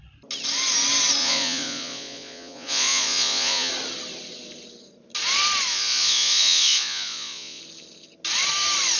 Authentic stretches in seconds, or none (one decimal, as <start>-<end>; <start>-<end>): 0.0-1.2; 3.7-5.7; 7.6-9.0